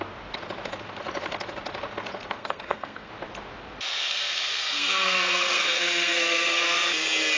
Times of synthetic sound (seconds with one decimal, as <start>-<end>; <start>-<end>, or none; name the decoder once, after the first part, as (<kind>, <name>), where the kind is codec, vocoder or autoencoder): 2.4-3.1 (codec, SNAC); 4.0-6.6